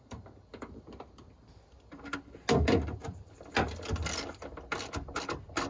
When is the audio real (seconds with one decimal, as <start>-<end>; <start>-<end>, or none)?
0.0-5.7